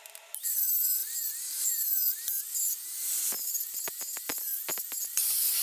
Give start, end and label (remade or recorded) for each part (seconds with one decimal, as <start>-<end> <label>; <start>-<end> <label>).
0.0-5.6 recorded